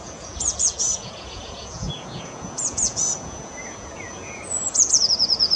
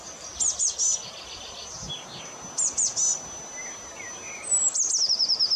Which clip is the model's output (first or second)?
first